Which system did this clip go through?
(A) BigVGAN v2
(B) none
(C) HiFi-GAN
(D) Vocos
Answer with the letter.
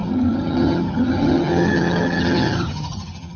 C